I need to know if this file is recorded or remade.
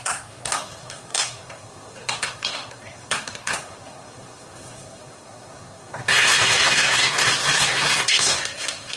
remade